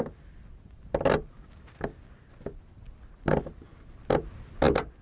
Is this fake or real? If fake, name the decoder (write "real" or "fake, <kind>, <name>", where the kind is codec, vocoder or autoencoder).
real